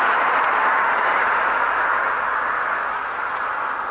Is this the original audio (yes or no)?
yes